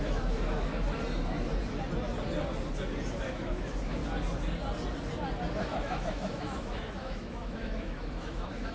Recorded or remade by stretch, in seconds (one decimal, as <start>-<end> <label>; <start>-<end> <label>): 0.0-0.7 remade; 0.7-3.2 recorded; 3.2-4.0 remade; 4.0-5.6 recorded; 5.6-8.7 remade